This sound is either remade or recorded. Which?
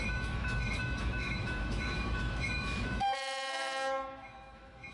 remade